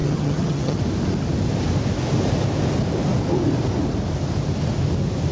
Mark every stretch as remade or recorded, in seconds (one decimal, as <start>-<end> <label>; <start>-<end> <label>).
0.0-0.8 remade; 0.8-5.3 recorded